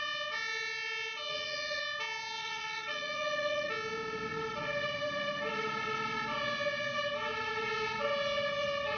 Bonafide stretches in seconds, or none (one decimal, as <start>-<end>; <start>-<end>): 0.0-1.3; 1.8-2.4; 3.7-9.0